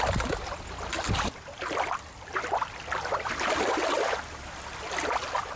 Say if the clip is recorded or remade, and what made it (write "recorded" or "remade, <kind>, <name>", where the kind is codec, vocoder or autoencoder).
recorded